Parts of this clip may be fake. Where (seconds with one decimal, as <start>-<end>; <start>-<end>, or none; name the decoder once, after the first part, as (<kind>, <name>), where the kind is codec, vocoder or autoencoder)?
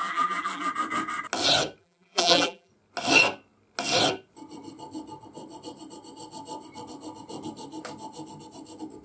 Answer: 0.0-0.7 (vocoder, BigVGAN v2); 1.8-2.7